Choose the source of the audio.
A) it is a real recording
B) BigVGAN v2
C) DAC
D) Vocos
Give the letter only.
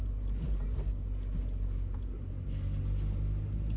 A